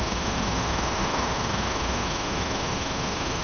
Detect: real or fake fake